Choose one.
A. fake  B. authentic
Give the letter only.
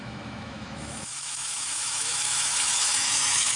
A